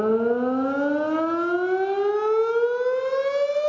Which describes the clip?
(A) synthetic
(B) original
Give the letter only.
B